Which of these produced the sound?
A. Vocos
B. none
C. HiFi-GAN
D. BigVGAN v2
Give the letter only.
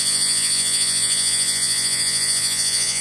A